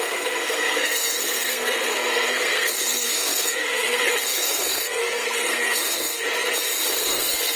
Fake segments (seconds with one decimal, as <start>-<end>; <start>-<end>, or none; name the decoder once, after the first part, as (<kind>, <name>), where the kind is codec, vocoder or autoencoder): 0.0-6.2 (codec, SNAC); 6.9-7.6